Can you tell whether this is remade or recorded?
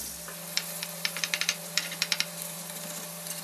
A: remade